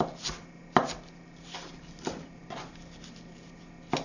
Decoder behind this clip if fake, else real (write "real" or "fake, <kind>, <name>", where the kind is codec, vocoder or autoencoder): real